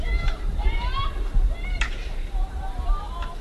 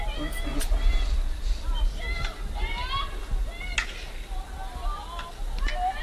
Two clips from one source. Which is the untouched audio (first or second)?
second